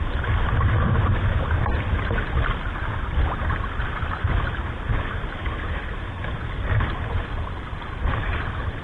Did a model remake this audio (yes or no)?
no